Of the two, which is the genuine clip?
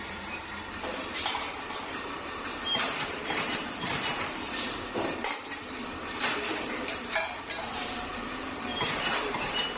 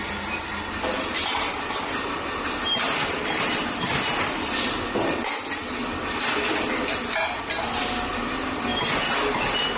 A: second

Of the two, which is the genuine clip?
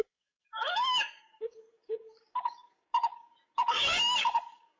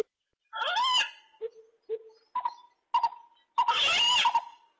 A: second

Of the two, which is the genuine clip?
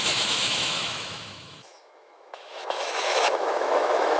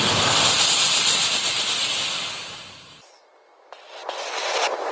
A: second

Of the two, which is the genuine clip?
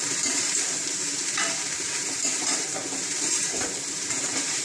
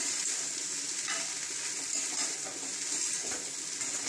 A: second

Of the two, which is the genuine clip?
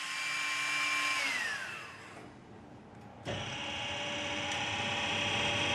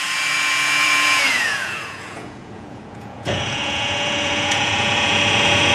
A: first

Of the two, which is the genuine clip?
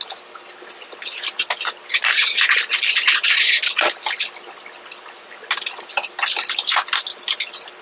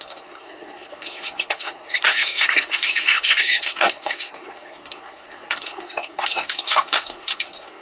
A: first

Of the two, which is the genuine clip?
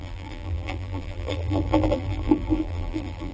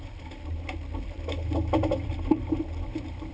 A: second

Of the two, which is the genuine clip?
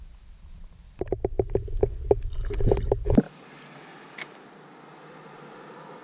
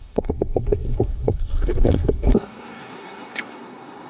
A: first